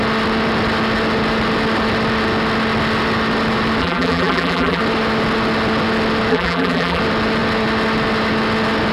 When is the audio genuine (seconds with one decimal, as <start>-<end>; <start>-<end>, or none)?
0.0-3.8; 4.8-6.3; 7.0-8.9